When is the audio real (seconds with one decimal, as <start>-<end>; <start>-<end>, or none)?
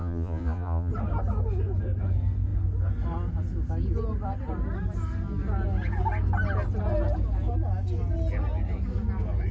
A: 0.9-9.5